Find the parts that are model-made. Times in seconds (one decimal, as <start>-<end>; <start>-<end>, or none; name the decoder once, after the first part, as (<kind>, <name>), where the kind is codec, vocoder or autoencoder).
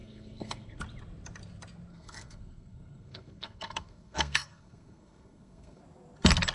0.0-0.8 (codec, SNAC); 1.9-5.8